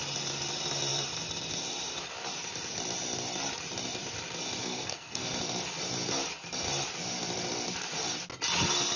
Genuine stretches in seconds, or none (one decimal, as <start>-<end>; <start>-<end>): 0.0-4.6; 5.3-9.0